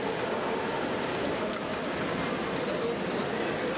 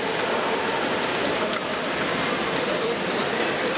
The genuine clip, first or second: first